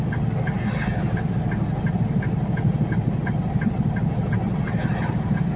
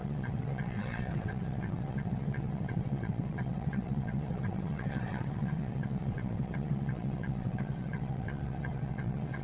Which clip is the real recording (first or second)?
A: first